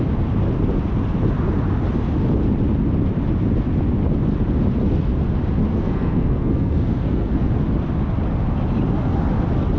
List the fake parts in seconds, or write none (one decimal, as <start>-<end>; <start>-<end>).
5.7-7.6